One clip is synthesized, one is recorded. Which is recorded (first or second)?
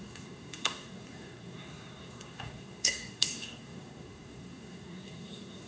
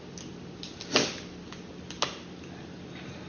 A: second